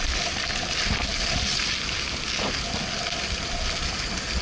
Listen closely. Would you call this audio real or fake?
real